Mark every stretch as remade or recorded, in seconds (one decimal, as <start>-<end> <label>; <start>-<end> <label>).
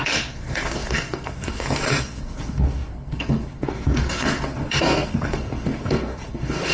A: 0.0-6.7 remade